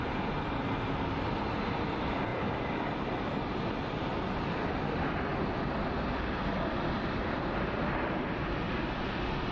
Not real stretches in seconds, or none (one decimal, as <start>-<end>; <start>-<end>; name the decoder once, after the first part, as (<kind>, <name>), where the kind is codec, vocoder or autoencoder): 2.3-4.2 (vocoder, BigVGAN v2); 5.3-8.3